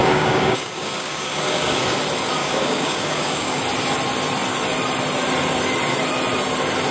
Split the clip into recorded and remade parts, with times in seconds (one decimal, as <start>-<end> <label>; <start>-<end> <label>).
0.0-2.0 remade; 2.0-2.4 recorded; 2.4-3.6 remade; 3.6-6.9 recorded